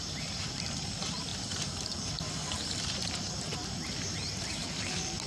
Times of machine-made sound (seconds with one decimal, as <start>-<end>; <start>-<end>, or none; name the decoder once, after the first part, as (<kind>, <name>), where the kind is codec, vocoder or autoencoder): 0.0-5.3 (vocoder, BigVGAN v2)